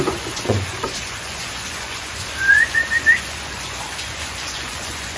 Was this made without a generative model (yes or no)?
no